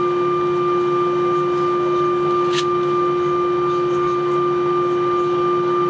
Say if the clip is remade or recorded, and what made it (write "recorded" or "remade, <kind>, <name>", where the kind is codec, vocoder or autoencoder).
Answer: recorded